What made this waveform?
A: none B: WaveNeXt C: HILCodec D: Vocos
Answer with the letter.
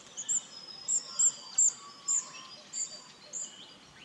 A